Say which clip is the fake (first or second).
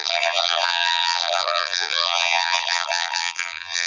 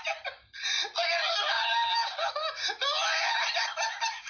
first